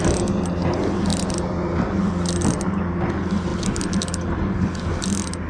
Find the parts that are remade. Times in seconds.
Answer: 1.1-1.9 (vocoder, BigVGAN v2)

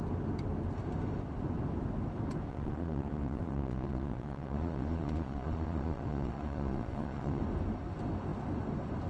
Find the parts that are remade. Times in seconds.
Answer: 2.5-7.4 (vocoder, Vocos)